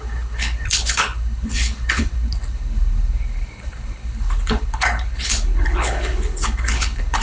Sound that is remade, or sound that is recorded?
remade